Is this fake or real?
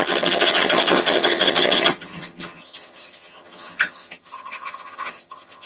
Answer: fake